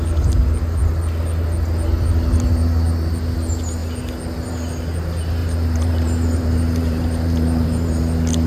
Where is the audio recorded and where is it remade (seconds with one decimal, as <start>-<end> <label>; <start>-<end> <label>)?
0.0-5.4 recorded; 5.4-8.0 remade; 8.0-8.5 recorded